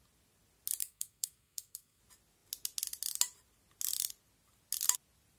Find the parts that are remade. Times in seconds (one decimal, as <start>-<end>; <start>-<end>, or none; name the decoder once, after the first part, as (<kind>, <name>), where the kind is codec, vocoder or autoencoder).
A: 0.8-2.0 (codec, SNAC)